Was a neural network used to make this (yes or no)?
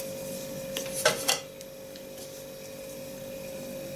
no